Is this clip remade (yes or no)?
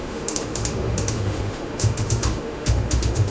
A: yes